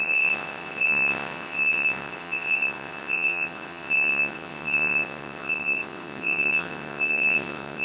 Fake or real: fake